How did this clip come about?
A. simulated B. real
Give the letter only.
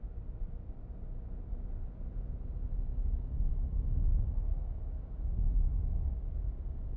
B